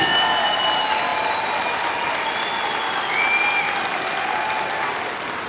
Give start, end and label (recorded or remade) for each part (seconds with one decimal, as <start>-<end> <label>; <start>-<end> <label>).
0.0-5.5 recorded